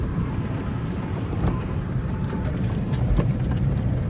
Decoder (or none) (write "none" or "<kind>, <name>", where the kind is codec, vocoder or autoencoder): vocoder, BigVGAN v2